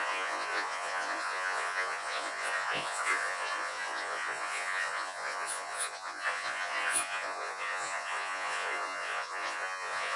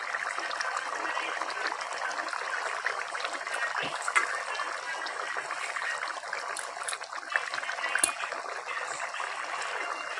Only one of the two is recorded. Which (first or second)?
second